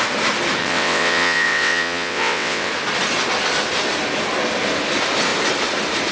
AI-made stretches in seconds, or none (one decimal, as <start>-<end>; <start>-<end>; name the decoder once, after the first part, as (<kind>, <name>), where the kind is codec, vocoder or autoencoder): 0.6-2.7 (vocoder, WaveNeXt)